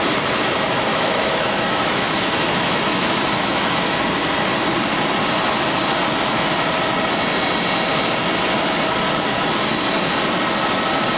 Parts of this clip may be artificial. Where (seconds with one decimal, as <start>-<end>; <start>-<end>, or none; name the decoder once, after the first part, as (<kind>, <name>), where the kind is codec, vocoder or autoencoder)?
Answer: 0.9-4.1 (autoencoder, DAC-VAE)